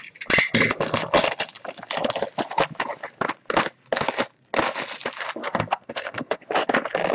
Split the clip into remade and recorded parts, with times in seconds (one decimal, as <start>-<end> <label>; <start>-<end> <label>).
0.0-5.4 recorded; 5.4-6.4 remade; 6.4-7.1 recorded